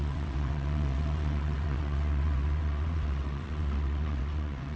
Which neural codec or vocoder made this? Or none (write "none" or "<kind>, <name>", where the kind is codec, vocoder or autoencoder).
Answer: vocoder, WaveNeXt